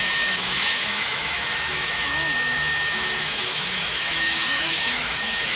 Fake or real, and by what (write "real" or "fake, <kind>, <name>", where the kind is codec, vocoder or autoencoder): fake, autoencoder, DAC-VAE